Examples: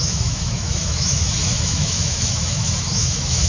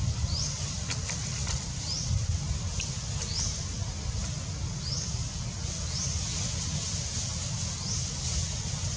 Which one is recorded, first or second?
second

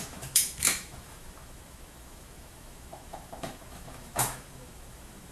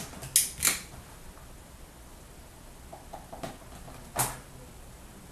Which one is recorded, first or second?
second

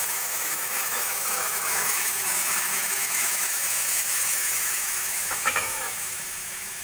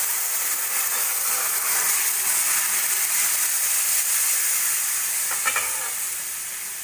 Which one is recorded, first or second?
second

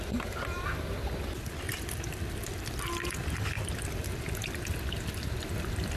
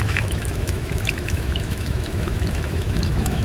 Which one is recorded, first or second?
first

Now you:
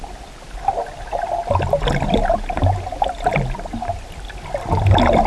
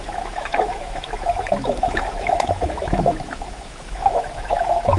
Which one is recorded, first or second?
first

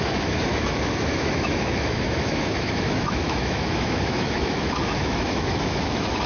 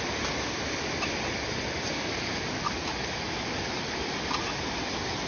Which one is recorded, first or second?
second